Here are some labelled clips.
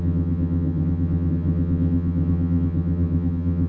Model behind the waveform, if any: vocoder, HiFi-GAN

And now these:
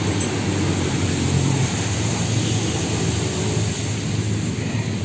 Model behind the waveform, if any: none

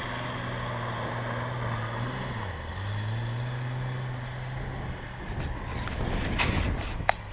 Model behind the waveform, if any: none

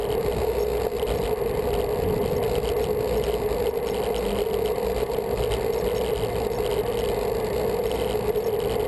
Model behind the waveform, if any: none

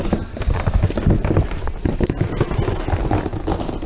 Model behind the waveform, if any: none